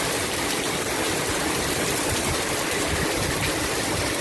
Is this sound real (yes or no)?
no